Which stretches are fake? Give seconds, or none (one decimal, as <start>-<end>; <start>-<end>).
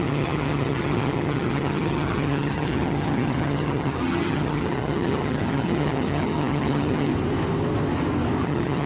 0.0-7.1; 8.4-8.9